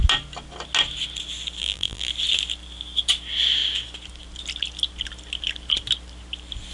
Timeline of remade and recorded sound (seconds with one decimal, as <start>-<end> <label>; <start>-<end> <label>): 0.0-1.6 recorded; 1.6-2.1 remade; 2.1-6.7 recorded